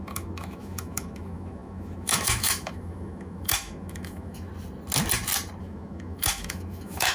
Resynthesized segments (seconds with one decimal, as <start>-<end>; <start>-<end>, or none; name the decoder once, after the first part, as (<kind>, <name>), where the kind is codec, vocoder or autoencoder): 0.0-4.5 (autoencoder, DAC-VAE); 5.6-7.1